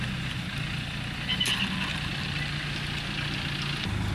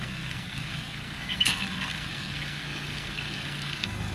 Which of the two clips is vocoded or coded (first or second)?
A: second